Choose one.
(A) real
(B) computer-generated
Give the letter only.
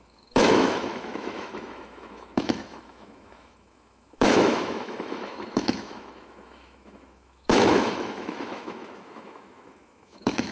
B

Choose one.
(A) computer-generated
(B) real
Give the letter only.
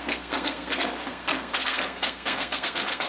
A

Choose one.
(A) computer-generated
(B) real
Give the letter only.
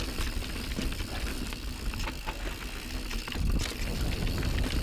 B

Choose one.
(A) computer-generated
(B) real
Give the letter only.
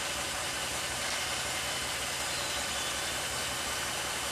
B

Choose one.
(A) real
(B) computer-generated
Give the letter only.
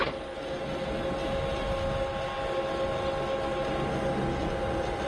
A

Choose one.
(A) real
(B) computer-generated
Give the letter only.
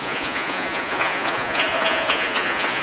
B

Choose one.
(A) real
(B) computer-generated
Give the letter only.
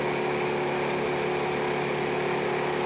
A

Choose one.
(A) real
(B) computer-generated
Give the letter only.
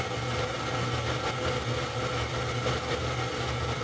A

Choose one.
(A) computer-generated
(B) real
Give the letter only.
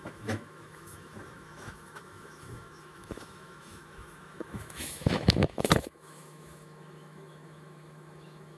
A